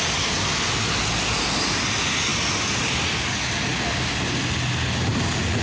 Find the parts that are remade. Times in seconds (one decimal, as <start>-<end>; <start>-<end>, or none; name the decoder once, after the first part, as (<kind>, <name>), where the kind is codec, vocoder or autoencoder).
none